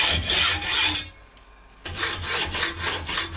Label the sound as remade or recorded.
recorded